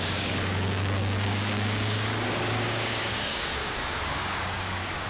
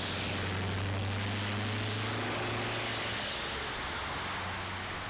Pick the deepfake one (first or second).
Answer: first